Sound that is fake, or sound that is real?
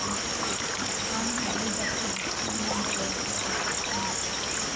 real